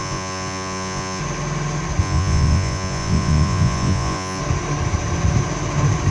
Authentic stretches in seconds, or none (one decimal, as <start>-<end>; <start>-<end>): 1.2-2.0; 4.4-6.1